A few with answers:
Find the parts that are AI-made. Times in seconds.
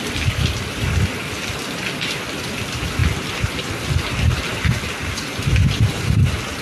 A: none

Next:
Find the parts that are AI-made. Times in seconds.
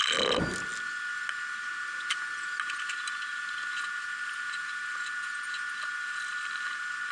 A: none